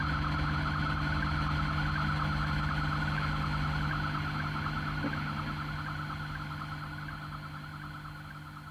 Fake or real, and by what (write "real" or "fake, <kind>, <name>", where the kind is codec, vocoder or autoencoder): real